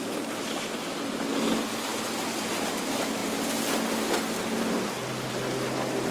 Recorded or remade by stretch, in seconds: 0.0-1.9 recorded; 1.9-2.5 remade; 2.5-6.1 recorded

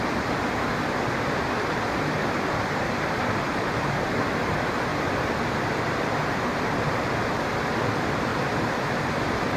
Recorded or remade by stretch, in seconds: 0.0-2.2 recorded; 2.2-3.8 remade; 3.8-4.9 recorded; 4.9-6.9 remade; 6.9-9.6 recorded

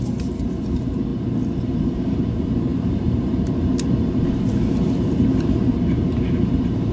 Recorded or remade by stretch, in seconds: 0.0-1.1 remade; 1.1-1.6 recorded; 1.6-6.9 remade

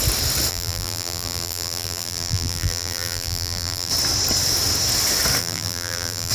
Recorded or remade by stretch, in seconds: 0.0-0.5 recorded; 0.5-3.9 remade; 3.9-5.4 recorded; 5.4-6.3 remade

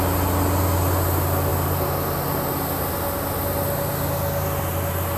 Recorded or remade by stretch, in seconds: 0.0-5.2 recorded

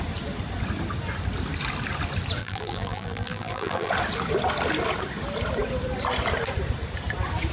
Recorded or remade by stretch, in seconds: 0.0-2.4 recorded; 2.4-3.9 remade; 3.9-7.5 recorded

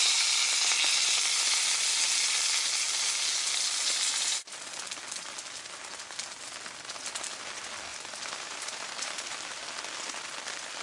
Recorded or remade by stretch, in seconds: 0.0-7.9 recorded; 7.9-9.3 remade; 9.3-10.8 recorded